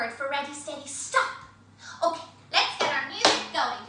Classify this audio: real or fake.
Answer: real